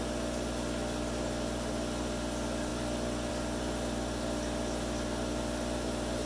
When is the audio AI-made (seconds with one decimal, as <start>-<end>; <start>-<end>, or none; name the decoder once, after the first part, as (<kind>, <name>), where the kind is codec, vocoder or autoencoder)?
none